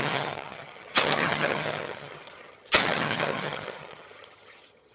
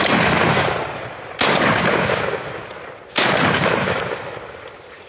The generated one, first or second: first